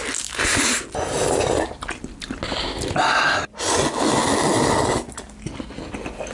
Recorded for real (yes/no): yes